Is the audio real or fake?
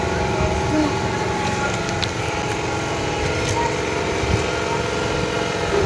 real